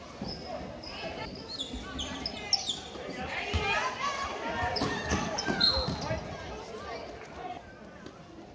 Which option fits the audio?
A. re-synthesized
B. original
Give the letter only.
B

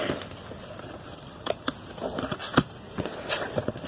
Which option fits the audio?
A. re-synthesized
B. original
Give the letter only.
B